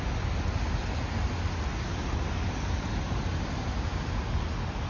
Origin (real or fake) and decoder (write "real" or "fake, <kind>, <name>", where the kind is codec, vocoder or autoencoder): real